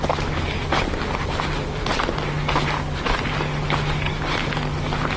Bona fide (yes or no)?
yes